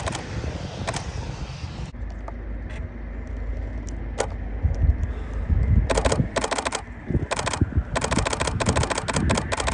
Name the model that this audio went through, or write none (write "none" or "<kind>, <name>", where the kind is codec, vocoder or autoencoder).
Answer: none